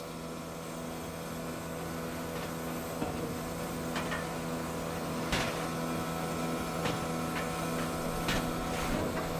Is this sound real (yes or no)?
yes